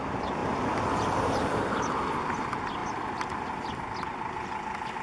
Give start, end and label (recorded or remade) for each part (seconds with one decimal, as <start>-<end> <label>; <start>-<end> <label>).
0.0-5.0 recorded